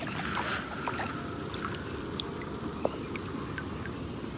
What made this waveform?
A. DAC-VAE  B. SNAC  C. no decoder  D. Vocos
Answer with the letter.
C